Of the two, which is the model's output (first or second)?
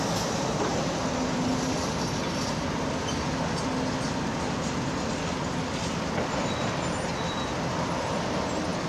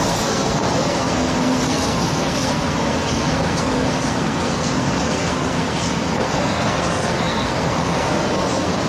second